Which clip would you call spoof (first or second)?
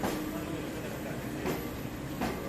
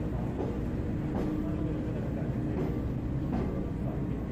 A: first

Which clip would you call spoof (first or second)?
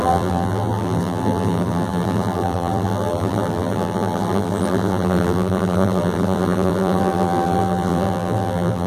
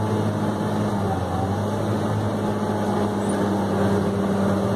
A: first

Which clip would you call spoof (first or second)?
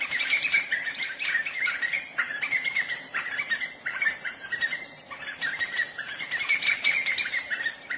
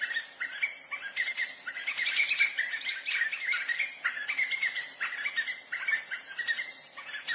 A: first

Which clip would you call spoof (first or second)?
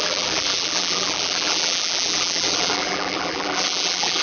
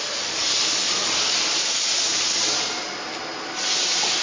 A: first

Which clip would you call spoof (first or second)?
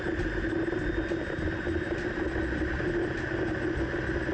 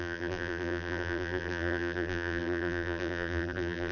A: second